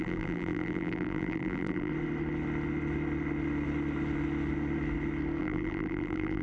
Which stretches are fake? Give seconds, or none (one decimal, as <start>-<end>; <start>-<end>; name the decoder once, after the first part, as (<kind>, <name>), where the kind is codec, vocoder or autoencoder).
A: 0.0-1.9 (vocoder, BigVGAN v2); 5.4-6.4